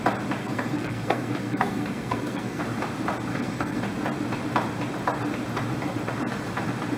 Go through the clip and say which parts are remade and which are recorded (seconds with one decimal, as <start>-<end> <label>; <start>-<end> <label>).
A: 0.0-0.4 recorded; 0.4-2.6 remade; 2.6-3.3 recorded; 3.3-3.8 remade; 3.8-7.0 recorded